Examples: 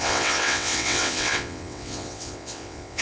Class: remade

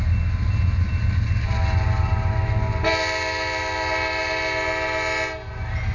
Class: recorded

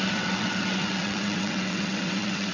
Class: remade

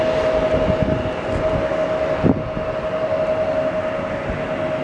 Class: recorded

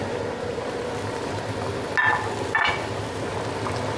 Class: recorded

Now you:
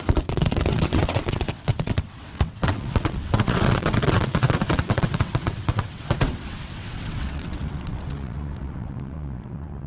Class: remade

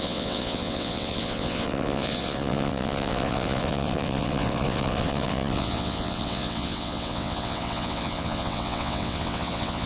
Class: remade